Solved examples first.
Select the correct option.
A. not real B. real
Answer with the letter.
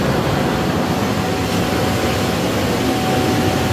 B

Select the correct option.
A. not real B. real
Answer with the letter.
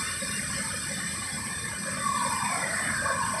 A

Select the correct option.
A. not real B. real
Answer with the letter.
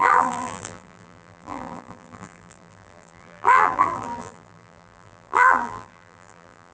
A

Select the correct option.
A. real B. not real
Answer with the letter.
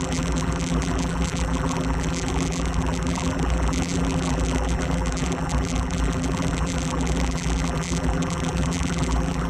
B